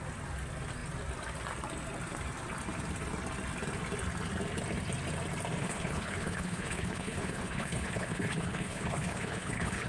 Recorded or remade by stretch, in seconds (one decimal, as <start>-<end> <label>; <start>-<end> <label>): 0.0-5.6 recorded; 5.6-9.9 remade